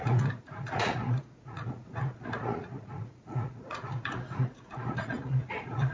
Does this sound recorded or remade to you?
remade